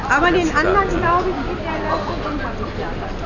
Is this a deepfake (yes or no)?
no